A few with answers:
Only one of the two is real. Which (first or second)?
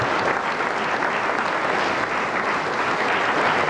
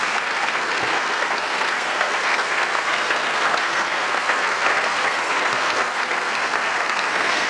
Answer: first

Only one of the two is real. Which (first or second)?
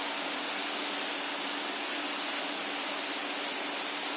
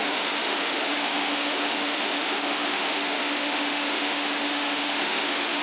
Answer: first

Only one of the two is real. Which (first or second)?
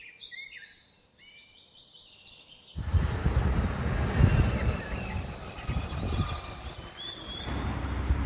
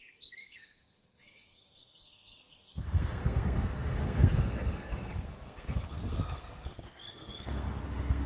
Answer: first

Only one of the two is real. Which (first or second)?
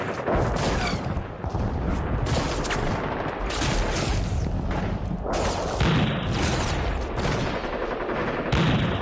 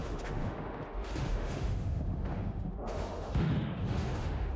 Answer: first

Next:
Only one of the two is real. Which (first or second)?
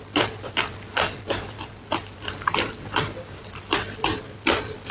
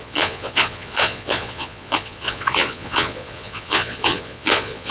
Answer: first